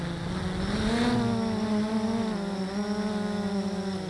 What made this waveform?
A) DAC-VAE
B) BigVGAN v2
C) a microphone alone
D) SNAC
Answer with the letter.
C